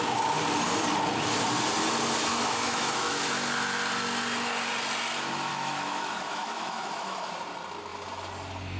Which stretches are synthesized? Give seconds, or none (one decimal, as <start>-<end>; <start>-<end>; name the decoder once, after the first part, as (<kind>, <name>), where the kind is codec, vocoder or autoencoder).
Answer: 2.2-3.3 (autoencoder, DAC-VAE); 5.5-7.3

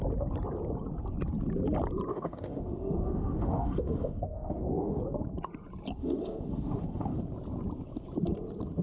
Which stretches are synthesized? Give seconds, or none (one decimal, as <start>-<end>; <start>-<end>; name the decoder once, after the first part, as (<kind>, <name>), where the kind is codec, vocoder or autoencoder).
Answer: 2.1-5.0 (autoencoder, DAC-VAE); 6.0-7.2

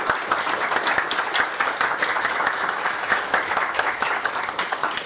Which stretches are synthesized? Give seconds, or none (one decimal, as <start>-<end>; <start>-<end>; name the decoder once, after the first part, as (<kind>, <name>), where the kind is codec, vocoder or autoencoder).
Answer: 2.1-4.1 (autoencoder, DAC-VAE)

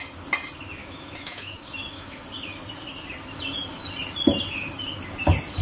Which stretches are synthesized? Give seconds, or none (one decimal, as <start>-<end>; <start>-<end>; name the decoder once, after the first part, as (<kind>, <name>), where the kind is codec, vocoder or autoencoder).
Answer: 0.8-2.2 (autoencoder, DAC-VAE)

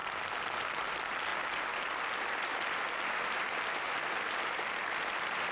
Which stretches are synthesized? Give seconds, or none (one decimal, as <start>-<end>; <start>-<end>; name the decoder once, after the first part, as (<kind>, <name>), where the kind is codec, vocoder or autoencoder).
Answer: none

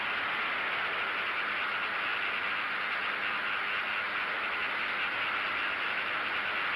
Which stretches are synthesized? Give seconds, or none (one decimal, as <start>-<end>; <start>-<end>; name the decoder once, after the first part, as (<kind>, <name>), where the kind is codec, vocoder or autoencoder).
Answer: none

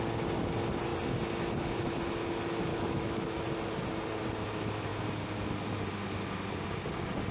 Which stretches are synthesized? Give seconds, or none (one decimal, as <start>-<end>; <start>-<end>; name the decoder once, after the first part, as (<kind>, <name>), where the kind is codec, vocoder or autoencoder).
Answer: 2.7-3.4 (autoencoder, DAC-VAE)

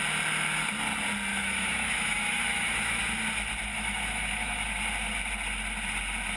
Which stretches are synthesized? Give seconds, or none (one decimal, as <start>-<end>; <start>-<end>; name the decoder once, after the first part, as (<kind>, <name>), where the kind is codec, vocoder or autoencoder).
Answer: 1.3-3.1 (autoencoder, DAC-VAE); 3.7-4.8